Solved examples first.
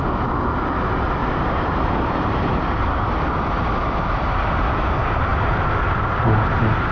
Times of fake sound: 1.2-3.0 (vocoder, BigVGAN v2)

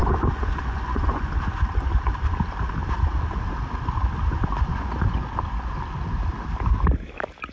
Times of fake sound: 0.0-1.3 (vocoder, Vocos); 4.7-5.2